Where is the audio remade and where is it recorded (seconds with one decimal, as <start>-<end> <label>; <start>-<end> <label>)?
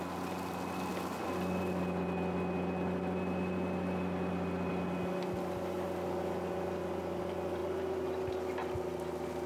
0.0-9.5 recorded